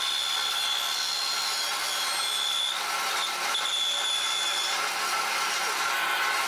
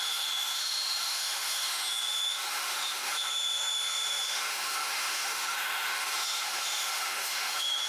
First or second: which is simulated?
second